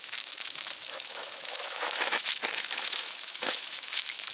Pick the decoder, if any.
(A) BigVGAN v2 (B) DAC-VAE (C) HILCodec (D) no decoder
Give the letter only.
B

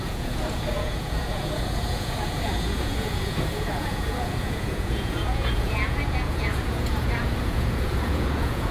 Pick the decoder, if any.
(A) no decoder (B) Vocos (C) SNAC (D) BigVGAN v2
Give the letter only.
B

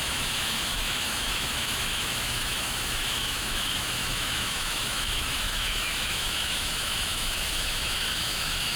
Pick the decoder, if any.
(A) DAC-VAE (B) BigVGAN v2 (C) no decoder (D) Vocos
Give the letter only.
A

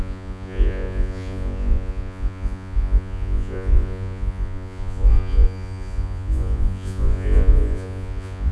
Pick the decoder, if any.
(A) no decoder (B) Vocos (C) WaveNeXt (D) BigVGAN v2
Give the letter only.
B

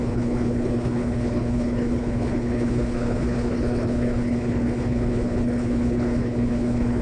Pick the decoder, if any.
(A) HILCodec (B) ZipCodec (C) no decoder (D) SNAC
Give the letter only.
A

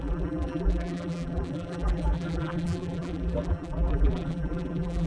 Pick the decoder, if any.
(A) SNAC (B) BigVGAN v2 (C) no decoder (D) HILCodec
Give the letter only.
B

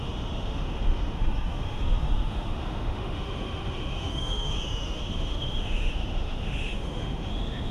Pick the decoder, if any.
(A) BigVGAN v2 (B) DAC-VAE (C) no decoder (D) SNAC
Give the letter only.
B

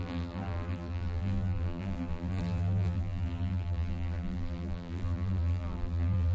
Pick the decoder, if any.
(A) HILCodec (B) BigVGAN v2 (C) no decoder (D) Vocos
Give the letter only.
B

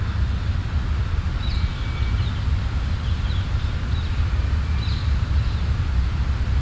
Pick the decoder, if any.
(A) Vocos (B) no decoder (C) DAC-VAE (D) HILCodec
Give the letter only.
B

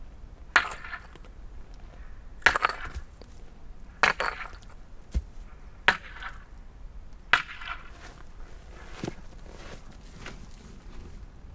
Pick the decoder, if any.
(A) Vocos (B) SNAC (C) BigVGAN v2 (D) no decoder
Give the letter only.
D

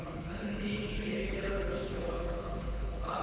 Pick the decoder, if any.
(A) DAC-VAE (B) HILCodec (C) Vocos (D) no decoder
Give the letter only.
B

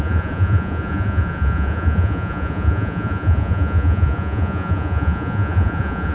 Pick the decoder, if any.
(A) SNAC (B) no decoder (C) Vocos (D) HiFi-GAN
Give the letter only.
C